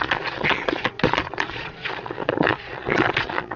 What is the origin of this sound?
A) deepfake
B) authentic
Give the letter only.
A